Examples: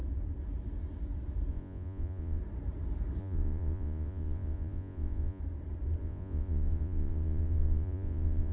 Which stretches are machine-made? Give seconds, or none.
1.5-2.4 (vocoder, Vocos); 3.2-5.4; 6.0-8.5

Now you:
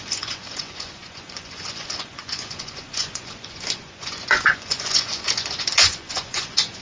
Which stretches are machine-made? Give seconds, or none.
0.0-6.8 (vocoder, Vocos)

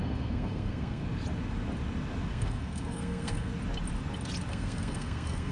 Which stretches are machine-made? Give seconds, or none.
0.0-1.0 (codec, SNAC); 2.3-3.5; 4.5-5.5

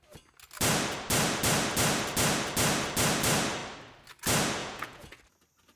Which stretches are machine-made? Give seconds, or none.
4.6-5.2 (vocoder, Vocos)

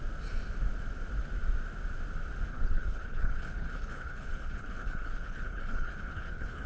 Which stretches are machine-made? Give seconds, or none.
2.5-6.7 (codec, HILCodec)